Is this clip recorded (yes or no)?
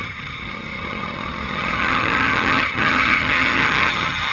no